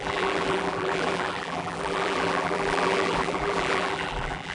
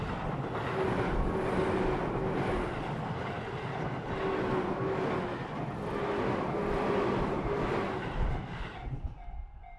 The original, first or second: second